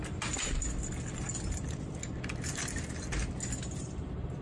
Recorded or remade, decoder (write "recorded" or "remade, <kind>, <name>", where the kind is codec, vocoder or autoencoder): recorded